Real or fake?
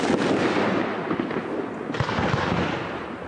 real